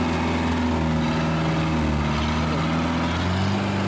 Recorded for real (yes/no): yes